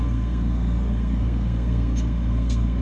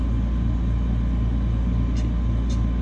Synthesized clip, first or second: first